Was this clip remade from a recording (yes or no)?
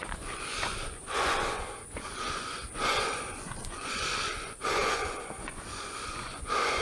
yes